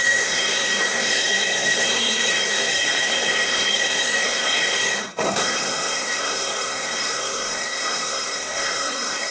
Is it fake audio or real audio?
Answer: fake